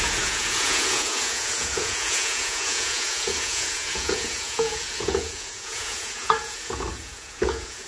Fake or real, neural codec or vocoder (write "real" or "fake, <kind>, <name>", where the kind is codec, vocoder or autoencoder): fake, vocoder, Vocos